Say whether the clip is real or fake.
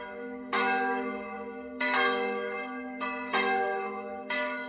fake